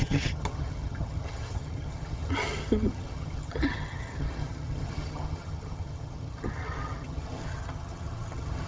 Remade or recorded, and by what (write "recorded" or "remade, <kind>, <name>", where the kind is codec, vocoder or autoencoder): remade, vocoder, HiFi-GAN